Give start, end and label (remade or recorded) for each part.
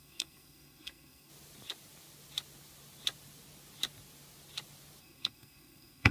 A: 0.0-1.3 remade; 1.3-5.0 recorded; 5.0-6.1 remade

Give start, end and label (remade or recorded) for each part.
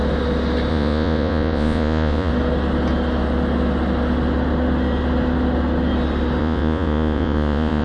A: 0.0-0.7 recorded; 0.7-2.3 remade; 2.3-6.4 recorded; 6.4-7.8 remade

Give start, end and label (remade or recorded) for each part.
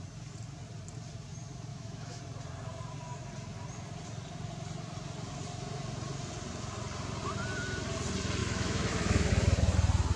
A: 0.0-1.7 recorded; 1.7-2.2 remade; 2.2-8.4 recorded; 8.4-9.3 remade; 9.3-10.2 recorded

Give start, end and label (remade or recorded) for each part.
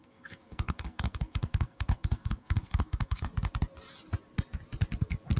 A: 0.0-3.3 remade; 3.3-5.4 recorded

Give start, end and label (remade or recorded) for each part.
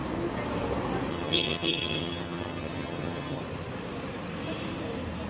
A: 0.0-1.1 recorded; 1.1-3.4 remade; 3.4-5.3 recorded